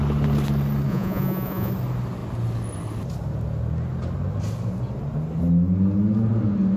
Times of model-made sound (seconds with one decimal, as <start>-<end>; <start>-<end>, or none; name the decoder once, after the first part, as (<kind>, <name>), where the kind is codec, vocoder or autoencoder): 0.9-1.7 (vocoder, Vocos)